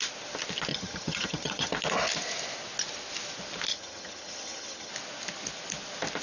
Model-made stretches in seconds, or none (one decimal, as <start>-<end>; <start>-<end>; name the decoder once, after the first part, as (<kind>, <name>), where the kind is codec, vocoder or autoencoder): 0.7-1.7 (vocoder, HiFi-GAN); 3.7-4.9

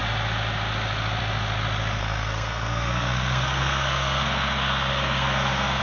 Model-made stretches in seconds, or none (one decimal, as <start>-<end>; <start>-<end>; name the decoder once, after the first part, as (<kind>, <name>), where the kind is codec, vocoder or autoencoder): 2.0-5.8 (codec, SNAC)

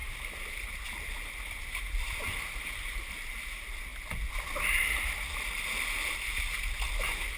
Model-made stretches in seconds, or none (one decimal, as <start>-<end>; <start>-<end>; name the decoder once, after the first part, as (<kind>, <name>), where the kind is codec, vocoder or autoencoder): none

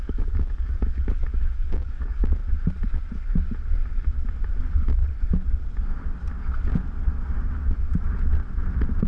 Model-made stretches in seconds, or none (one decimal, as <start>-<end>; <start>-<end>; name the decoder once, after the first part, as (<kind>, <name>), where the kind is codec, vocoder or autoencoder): 0.0-2.4 (codec, DAC); 4.6-5.0